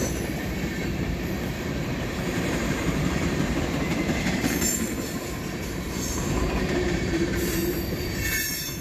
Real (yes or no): no